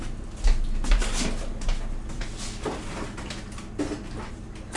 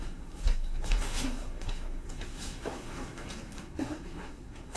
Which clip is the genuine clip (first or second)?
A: first